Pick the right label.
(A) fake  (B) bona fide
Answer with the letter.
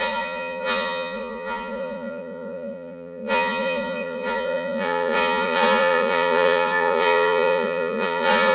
A